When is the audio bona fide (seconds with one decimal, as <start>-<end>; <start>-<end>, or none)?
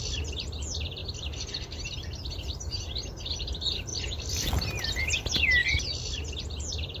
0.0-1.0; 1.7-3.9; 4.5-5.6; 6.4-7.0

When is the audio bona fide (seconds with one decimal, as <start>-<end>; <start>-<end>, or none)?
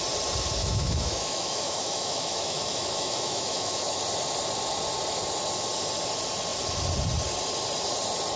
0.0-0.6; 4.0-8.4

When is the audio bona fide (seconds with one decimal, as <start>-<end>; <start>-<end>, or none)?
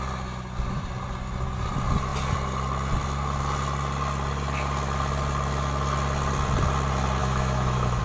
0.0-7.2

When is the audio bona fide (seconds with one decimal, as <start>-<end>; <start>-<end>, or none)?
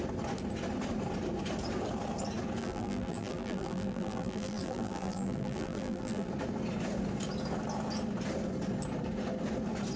0.0-2.6; 6.3-10.0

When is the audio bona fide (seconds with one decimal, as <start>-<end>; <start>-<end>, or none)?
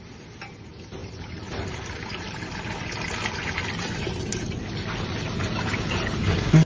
0.0-6.2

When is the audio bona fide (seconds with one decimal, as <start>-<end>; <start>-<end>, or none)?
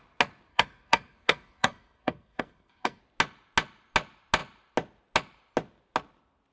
0.0-0.5; 3.0-6.5